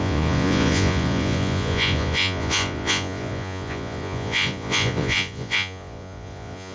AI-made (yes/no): yes